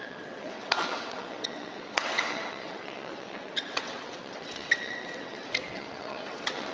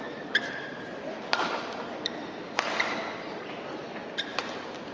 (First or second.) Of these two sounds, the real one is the second